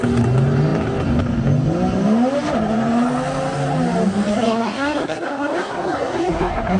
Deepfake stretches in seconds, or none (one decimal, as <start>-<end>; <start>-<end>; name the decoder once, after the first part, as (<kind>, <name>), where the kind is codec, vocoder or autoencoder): 4.3-6.8 (codec, SNAC)